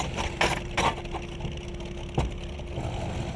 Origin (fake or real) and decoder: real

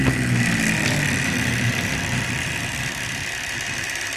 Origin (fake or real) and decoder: real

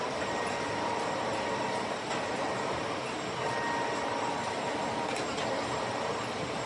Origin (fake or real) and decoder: real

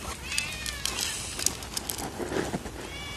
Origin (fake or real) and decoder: real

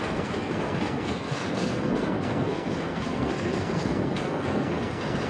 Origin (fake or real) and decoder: fake, codec, SNAC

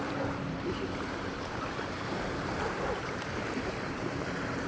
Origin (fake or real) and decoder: fake, vocoder, BigVGAN v2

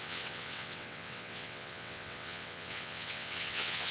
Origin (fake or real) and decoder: fake, vocoder, WaveNeXt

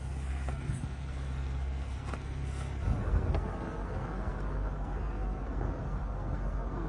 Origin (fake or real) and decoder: fake, codec, SNAC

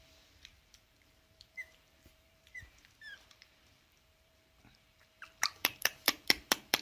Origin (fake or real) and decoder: fake, vocoder, BigVGAN v2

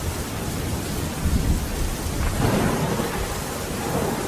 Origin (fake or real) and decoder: real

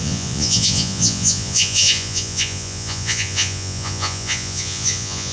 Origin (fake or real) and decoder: fake, vocoder, Vocos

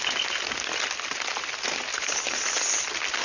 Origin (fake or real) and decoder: real